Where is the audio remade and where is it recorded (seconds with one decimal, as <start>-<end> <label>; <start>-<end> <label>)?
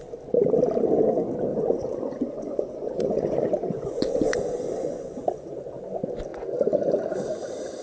0.0-1.5 recorded; 1.5-5.5 remade; 5.5-7.8 recorded